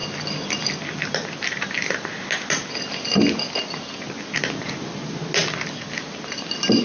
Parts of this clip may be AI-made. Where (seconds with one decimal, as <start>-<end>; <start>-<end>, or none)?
none